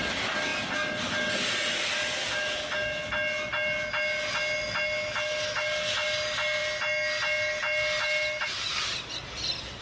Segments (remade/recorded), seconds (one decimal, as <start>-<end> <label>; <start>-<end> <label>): 0.0-9.8 recorded